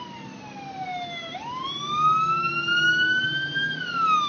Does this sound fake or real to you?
real